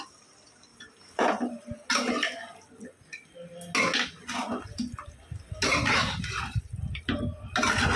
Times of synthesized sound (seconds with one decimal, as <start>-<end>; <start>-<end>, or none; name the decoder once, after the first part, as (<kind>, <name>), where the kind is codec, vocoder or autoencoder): 0.7-1.3 (vocoder, BigVGAN v2); 5.7-7.2